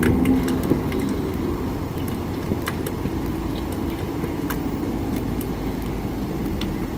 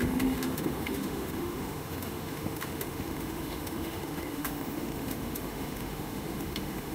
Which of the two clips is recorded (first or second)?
first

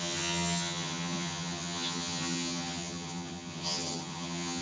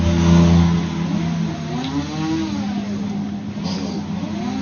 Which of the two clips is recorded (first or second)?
second